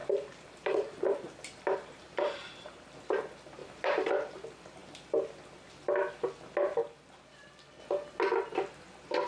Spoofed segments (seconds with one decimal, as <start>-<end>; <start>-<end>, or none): 0.0-2.8; 3.6-4.1